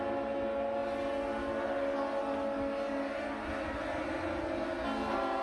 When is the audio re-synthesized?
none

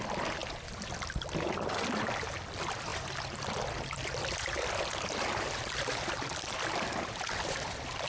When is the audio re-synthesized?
2.9-5.7 (vocoder, BigVGAN v2)